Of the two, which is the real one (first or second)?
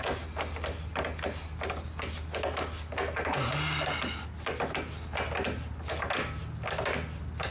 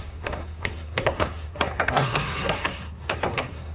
first